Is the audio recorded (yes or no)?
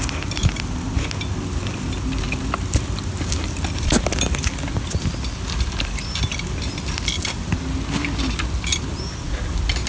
yes